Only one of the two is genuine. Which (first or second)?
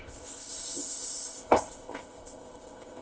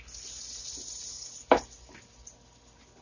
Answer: second